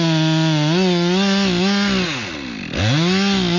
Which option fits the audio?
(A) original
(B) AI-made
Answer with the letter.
A